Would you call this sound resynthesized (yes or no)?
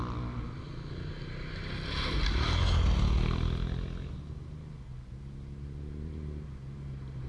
no